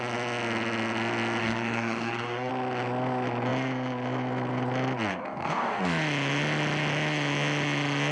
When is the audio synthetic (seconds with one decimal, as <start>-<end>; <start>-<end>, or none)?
1.4-2.5; 5.1-5.8